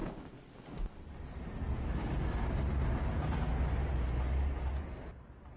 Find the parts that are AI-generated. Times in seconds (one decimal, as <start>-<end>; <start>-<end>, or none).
none